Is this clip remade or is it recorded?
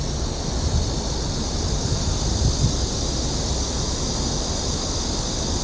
recorded